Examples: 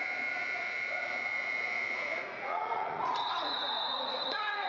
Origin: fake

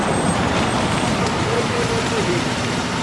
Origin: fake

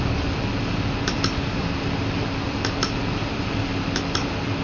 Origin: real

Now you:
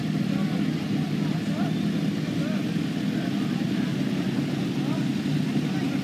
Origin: real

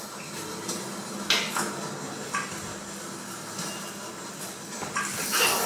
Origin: real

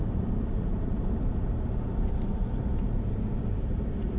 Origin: fake